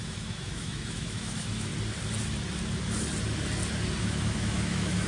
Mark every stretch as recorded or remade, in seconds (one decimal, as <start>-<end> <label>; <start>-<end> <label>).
0.0-1.7 remade; 1.7-4.0 recorded; 4.0-5.1 remade